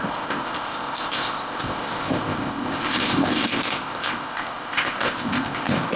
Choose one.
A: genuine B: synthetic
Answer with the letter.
B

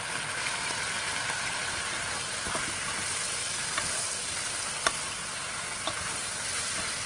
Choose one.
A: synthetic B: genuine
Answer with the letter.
B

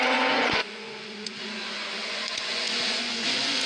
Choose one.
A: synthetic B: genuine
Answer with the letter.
A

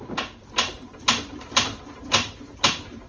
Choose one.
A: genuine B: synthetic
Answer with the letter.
B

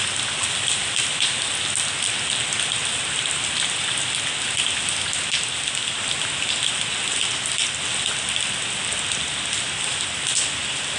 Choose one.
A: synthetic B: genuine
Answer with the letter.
B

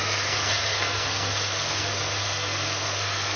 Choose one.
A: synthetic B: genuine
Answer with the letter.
A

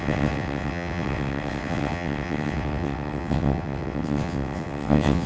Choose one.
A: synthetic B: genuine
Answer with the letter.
A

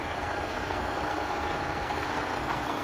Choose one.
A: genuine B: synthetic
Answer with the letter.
B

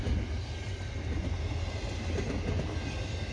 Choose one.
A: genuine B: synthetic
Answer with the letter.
A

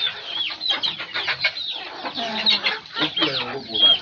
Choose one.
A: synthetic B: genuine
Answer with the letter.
B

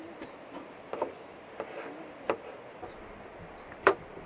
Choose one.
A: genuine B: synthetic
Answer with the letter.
A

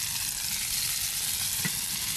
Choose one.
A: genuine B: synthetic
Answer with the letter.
A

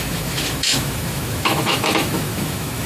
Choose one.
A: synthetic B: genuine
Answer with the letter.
A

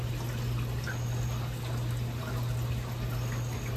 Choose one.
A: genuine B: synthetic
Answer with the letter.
A